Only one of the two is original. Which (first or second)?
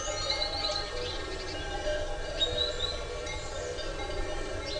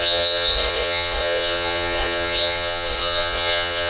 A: first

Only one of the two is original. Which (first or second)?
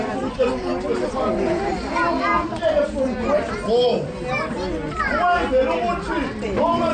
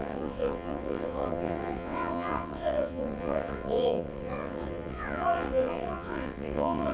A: first